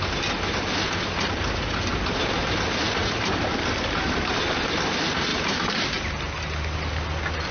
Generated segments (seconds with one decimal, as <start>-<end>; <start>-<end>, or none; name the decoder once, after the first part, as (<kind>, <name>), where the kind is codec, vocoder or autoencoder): 3.0-4.7 (vocoder, BigVGAN v2); 5.3-6.3